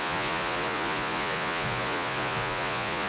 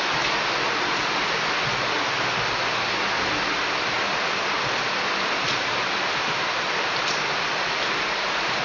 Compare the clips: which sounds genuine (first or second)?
second